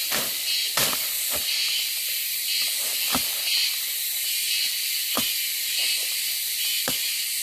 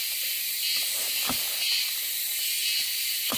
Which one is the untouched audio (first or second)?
second